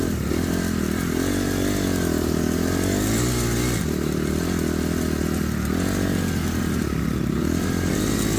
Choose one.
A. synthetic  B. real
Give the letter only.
B